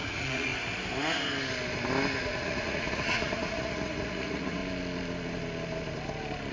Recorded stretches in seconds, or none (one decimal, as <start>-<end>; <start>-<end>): 0.5-2.2; 4.6-6.5